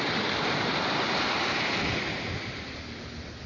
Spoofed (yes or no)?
no